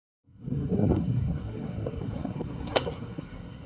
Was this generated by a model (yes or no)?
yes